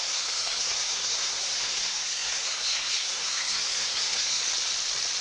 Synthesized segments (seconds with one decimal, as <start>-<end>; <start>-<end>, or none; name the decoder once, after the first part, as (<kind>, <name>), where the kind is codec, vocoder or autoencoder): 0.0-4.4 (codec, SNAC)